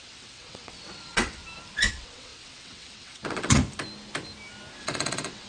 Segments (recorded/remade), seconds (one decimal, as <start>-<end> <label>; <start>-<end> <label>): 0.0-1.4 remade; 1.4-1.9 recorded; 1.9-3.6 remade; 3.6-4.8 recorded; 4.8-5.5 remade